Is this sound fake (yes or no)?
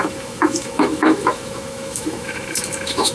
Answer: yes